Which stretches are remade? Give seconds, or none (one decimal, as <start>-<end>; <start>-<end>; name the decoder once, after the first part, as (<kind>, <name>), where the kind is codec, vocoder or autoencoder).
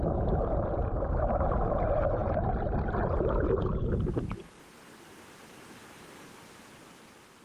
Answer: none